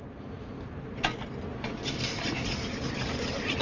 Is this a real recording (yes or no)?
yes